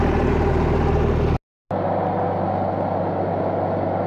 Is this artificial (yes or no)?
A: no